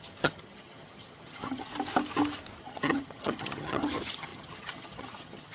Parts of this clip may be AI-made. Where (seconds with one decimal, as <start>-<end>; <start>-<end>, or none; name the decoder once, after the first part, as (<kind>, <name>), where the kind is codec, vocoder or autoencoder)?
0.0-1.7 (vocoder, HiFi-GAN); 2.6-5.5